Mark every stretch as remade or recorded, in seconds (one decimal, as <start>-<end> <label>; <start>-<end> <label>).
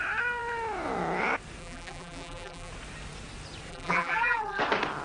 0.0-1.6 recorded; 1.6-2.7 remade; 2.7-3.7 recorded; 3.7-4.6 remade; 4.6-5.0 recorded